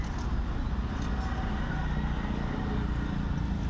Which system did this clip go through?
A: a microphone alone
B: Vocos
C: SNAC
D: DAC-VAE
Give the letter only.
A